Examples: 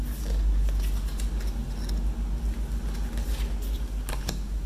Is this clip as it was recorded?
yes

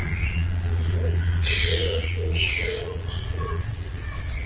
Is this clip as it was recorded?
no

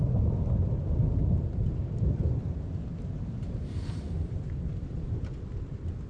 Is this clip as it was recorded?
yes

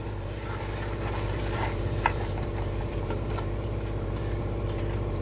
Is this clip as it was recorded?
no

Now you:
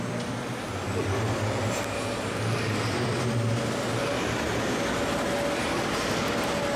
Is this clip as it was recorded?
yes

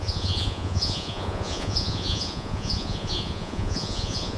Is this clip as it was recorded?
no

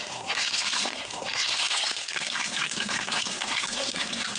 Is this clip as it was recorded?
no